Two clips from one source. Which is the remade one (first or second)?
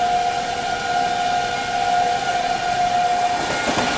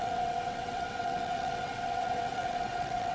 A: second